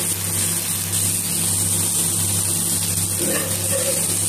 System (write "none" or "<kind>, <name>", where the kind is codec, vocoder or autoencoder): none